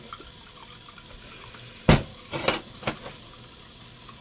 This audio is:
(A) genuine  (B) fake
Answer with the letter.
A